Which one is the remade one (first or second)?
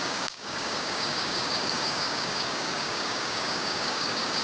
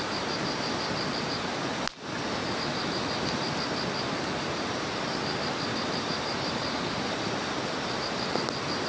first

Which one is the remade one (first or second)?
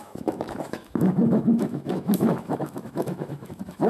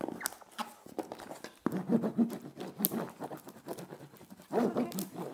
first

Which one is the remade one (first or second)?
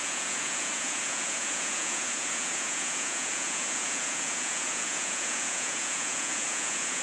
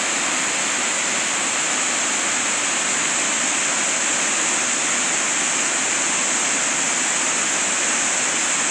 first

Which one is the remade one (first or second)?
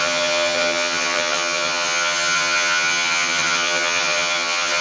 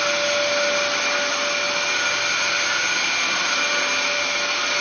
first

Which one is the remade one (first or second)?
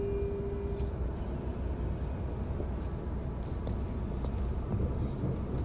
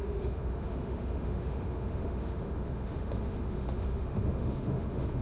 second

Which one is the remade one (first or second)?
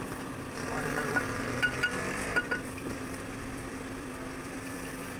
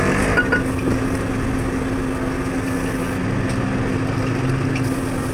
first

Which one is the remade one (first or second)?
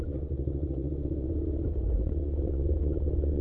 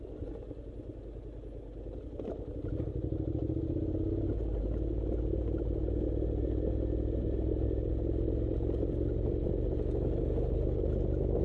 first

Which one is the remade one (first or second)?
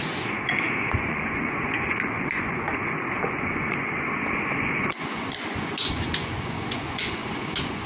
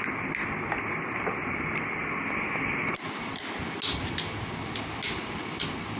first